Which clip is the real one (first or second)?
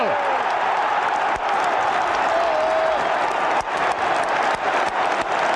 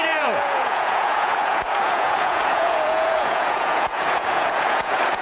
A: first